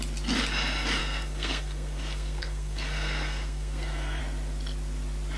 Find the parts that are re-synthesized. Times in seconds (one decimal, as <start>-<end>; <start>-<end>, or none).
1.0-4.2